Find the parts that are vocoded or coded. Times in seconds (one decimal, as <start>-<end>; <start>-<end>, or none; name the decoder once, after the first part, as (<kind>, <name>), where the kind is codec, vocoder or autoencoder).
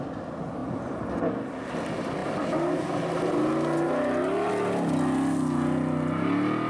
none